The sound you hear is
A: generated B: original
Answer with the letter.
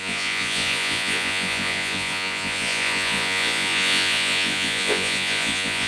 A